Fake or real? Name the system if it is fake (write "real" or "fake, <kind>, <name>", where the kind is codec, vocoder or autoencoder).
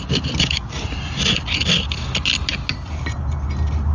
real